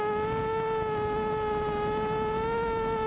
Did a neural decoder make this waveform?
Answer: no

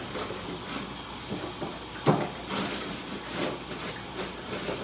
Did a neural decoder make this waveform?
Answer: no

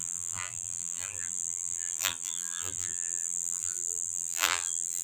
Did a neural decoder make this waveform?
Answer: yes